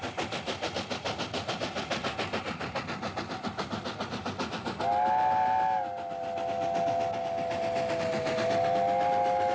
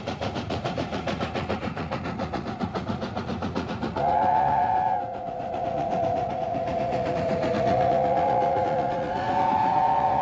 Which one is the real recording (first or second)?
first